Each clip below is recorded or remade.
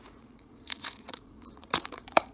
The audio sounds remade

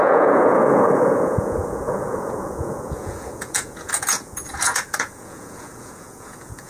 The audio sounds remade